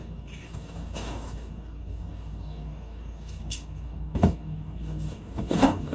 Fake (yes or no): yes